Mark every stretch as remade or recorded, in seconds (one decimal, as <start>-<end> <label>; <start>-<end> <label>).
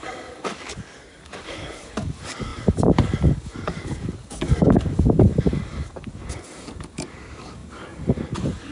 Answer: 0.0-8.7 remade